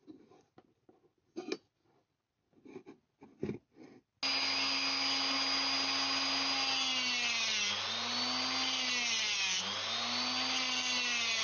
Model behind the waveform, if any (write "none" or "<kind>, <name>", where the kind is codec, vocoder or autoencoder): none